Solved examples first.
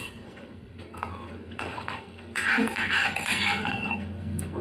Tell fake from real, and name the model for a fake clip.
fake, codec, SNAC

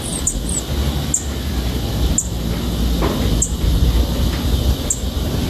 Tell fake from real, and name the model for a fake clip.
real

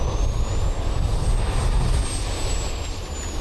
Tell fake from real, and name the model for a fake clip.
real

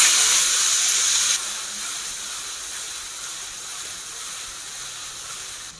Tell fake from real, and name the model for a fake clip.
real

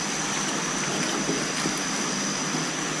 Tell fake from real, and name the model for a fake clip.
real